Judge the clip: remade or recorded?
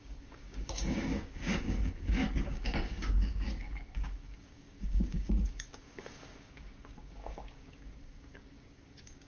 remade